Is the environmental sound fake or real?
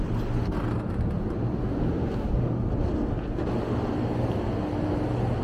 real